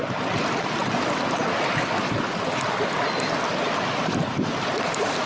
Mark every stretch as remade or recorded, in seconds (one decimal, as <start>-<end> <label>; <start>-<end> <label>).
0.0-5.3 recorded